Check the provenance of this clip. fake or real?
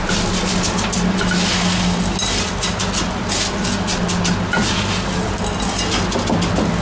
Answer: real